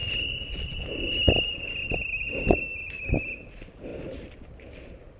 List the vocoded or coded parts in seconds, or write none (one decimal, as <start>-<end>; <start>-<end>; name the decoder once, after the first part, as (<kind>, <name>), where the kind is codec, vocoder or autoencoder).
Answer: 0.0-0.9 (vocoder, BigVGAN v2); 3.9-4.5